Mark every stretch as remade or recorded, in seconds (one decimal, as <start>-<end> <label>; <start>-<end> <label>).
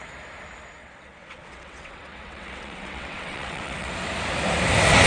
0.0-0.8 recorded; 0.8-3.9 remade; 3.9-5.1 recorded